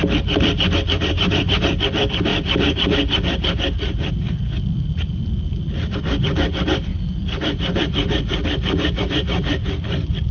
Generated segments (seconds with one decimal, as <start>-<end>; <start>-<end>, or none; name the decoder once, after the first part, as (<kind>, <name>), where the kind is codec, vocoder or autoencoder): none

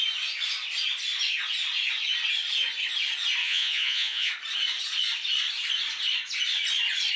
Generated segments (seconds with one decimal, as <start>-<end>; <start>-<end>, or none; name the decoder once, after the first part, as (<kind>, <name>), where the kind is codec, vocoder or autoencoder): 3.4-4.3 (vocoder, Vocos)